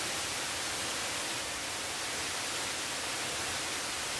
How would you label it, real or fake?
real